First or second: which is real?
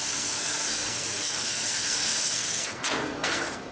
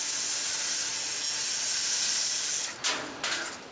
second